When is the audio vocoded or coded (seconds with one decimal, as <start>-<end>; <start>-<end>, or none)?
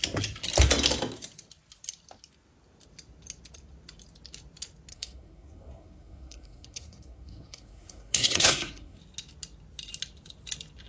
4.9-9.0